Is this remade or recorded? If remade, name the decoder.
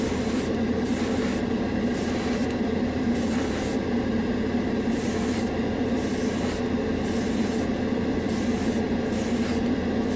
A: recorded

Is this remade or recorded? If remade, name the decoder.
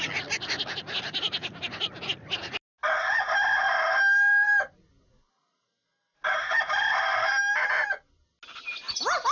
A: recorded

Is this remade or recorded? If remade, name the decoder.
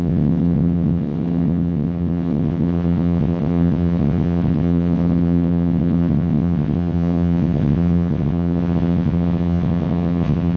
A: remade, vocoder, WaveNeXt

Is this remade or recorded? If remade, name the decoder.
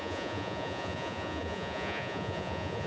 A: remade, vocoder, Vocos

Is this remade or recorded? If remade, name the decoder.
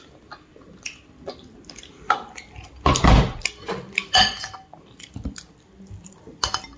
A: recorded